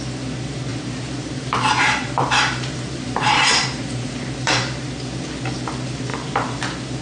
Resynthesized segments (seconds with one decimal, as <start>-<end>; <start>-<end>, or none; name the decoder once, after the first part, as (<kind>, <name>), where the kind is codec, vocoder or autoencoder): 0.7-4.9 (vocoder, BigVGAN v2); 6.1-6.6